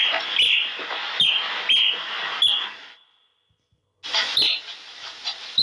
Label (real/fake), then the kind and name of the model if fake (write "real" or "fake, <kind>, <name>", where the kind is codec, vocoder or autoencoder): real